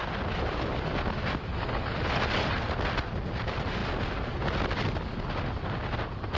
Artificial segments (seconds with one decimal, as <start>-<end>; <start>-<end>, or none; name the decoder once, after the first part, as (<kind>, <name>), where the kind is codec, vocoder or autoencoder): 1.5-2.2 (codec, HILCodec)